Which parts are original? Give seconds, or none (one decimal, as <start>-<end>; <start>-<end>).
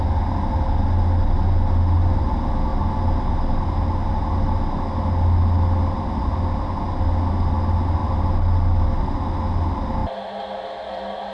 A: 0.0-11.3